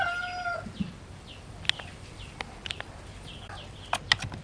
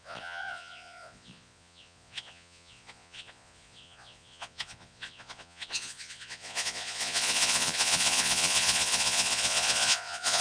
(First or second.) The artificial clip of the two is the second